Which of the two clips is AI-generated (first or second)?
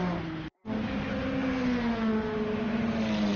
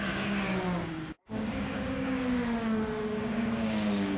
second